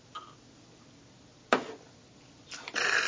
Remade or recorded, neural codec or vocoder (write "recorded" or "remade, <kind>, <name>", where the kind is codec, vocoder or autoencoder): recorded